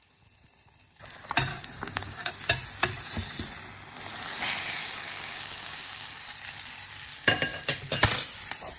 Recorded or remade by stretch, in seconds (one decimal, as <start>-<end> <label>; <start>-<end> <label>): 0.0-1.5 recorded; 1.5-2.3 remade; 2.3-4.8 recorded; 4.8-6.2 remade; 6.2-8.8 recorded

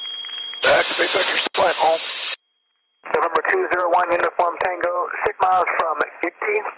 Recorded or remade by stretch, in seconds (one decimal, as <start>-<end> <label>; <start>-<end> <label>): 0.0-0.6 remade; 0.6-1.1 recorded; 1.1-2.6 remade; 2.6-3.4 recorded; 3.4-6.8 remade

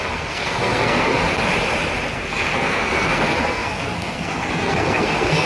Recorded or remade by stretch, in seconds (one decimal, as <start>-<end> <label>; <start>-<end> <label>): 0.0-1.1 remade; 1.1-2.1 recorded; 2.1-5.5 remade

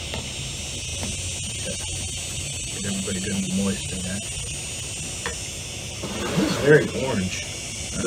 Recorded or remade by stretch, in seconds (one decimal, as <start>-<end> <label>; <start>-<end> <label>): 0.0-8.1 recorded

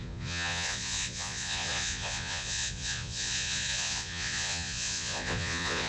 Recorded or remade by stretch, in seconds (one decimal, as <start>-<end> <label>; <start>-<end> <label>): 0.0-5.9 remade

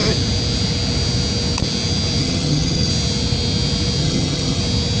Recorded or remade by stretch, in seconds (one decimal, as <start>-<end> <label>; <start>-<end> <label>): 0.0-2.2 recorded; 2.2-2.9 remade; 2.9-4.0 recorded; 4.0-4.6 remade; 4.6-5.0 recorded

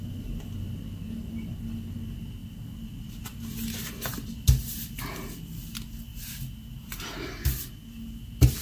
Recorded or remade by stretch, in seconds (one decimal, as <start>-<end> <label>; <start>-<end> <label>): 0.0-6.1 recorded; 6.1-7.7 remade; 7.7-8.6 recorded